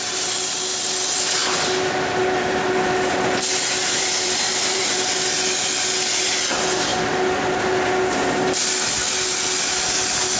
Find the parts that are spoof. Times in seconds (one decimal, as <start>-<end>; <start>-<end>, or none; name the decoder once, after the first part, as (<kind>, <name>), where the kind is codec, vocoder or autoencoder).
3.8-4.8 (vocoder, BigVGAN v2)